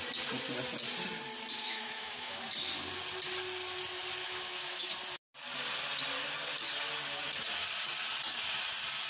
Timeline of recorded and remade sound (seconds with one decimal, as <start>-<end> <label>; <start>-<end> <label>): 0.0-1.6 recorded; 1.6-2.4 remade; 2.4-4.2 recorded; 4.2-4.9 remade; 4.9-9.1 recorded